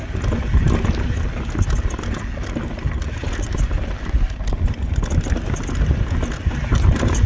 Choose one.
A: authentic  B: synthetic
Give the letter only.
A